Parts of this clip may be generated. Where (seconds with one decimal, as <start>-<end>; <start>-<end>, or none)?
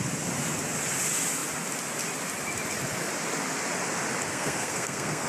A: 4.3-5.3